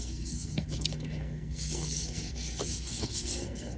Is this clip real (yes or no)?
no